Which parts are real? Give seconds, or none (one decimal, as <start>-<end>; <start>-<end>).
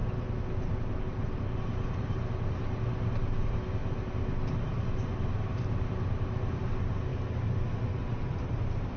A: 0.0-9.0